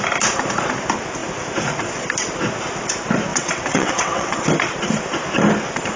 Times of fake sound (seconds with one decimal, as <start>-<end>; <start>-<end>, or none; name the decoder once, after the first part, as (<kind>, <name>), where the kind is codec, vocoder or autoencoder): 3.3-4.4 (vocoder, WaveNeXt)